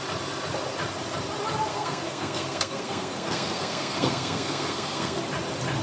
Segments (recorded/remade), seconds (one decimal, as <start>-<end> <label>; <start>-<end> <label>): 0.0-1.7 recorded; 1.7-5.2 remade; 5.2-5.8 recorded